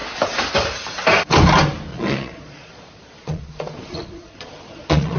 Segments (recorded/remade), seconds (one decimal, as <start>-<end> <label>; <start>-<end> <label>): 0.0-1.9 recorded; 1.9-5.2 remade